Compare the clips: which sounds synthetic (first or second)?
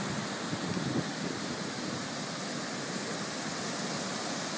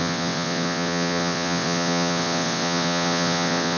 second